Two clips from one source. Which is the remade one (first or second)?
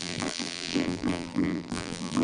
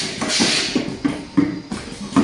first